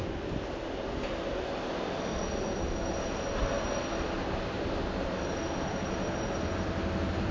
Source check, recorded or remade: recorded